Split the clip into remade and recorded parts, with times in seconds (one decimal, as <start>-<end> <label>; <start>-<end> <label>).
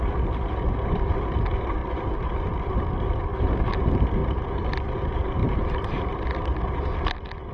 0.0-5.4 recorded; 5.4-6.1 remade; 6.1-7.5 recorded